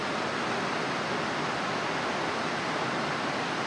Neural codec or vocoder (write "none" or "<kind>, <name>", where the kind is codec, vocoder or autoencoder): none